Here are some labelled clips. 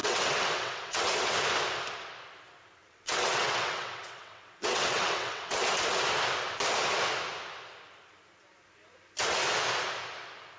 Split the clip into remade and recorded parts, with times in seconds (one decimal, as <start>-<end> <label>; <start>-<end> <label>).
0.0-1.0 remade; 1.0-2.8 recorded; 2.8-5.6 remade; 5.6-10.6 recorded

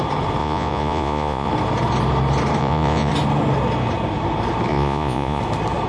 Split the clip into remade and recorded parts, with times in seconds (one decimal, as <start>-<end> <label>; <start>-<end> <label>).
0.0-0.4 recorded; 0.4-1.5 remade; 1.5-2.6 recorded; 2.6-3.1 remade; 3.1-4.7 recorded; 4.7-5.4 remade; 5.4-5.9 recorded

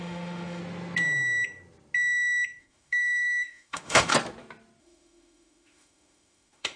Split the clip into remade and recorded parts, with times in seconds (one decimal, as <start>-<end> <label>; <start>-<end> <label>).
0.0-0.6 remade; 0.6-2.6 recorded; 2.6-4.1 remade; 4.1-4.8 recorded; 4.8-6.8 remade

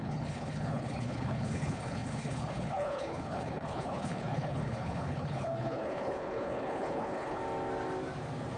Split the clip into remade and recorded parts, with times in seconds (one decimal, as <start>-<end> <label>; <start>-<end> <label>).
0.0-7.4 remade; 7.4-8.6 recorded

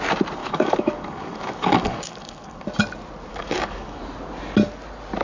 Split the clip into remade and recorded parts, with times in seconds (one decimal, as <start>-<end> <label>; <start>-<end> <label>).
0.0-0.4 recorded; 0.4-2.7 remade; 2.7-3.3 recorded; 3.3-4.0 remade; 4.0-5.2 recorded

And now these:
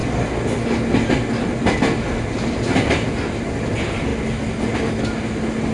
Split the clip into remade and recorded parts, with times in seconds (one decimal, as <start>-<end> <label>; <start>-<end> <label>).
0.0-5.7 recorded